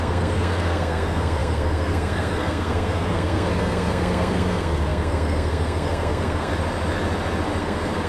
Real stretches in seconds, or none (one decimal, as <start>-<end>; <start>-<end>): 6.5-7.6